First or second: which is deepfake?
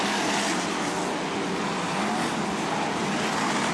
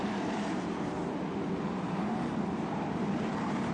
second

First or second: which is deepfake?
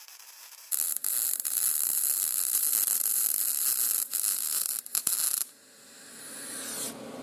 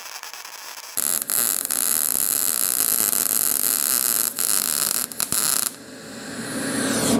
first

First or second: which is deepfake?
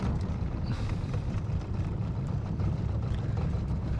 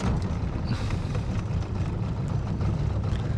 first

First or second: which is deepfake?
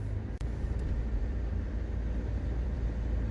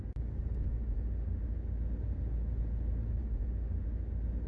first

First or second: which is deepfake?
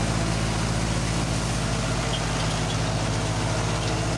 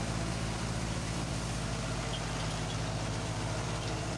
second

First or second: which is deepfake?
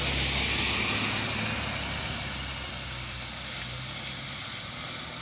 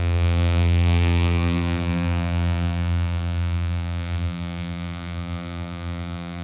second